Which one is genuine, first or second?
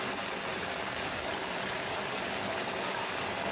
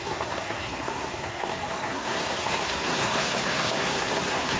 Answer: first